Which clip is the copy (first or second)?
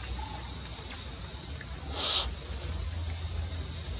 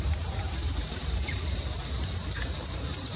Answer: second